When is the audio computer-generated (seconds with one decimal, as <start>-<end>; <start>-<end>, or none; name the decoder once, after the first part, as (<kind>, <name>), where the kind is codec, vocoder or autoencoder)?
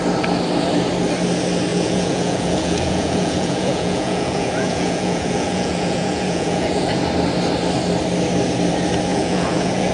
1.7-7.0 (vocoder, Vocos); 9.1-9.9